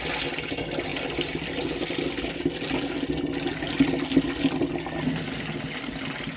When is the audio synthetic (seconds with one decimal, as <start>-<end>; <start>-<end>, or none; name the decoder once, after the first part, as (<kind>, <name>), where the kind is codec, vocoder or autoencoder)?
none